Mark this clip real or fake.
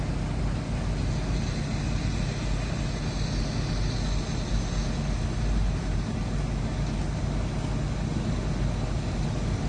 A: real